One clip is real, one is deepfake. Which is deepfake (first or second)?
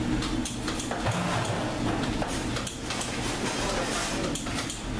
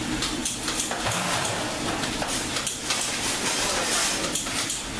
second